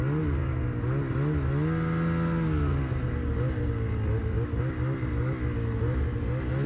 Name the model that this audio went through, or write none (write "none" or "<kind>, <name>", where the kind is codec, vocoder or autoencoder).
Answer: none